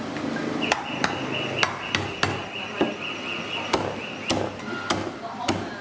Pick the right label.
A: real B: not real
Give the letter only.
A